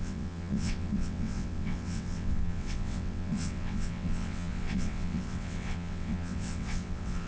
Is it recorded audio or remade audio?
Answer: remade